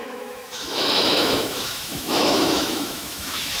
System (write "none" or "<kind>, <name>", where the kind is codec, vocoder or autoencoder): autoencoder, DAC-VAE